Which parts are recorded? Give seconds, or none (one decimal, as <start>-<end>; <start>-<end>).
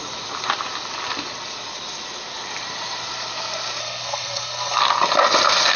0.0-3.8; 4.8-5.8